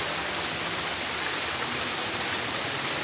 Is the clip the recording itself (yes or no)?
yes